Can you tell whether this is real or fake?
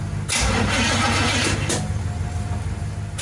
real